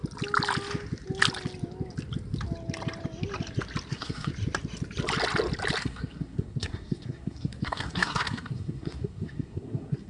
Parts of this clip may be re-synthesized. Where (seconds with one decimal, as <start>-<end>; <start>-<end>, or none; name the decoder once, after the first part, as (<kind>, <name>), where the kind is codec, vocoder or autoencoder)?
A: 3.9-4.3 (codec, SNAC); 5.8-10.1